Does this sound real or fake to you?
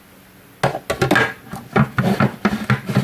real